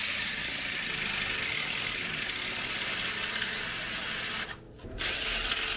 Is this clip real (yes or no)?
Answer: yes